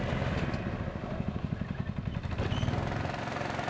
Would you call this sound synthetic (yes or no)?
no